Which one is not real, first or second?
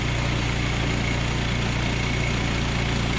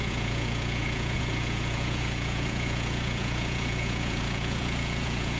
second